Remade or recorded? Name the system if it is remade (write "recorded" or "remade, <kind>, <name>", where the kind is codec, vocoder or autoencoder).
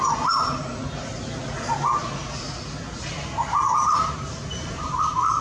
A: recorded